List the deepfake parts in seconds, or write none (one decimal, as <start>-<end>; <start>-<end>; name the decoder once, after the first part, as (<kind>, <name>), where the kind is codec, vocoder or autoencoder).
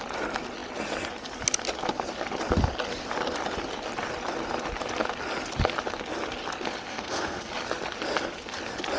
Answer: 6.9-7.5 (codec, SNAC)